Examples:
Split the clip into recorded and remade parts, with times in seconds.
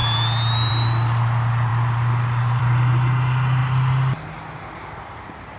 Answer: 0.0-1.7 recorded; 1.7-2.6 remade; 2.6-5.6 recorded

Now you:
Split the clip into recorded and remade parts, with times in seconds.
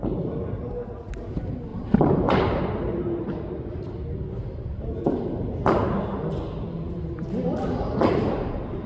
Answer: 0.0-1.7 recorded; 1.7-2.6 remade; 2.6-8.9 recorded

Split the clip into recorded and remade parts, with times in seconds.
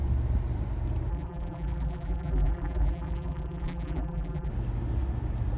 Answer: 0.0-1.1 recorded; 1.1-4.5 remade; 4.5-5.6 recorded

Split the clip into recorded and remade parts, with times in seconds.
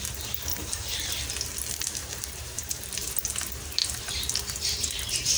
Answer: 0.0-0.5 recorded; 0.5-1.1 remade; 1.1-2.0 recorded; 2.0-3.1 remade; 3.1-3.8 recorded; 3.8-5.4 remade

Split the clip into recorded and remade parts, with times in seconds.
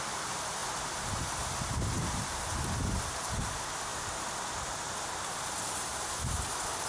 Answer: 0.0-0.6 recorded; 0.6-2.2 remade; 2.2-5.9 recorded; 5.9-6.5 remade; 6.5-6.9 recorded